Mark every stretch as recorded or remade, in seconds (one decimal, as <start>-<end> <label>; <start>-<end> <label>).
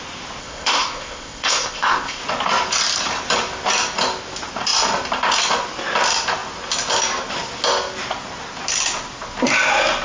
0.0-0.4 recorded; 0.4-2.2 remade; 2.2-10.0 recorded